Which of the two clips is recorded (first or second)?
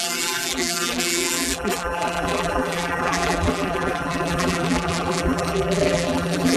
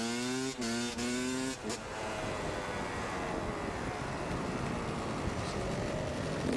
second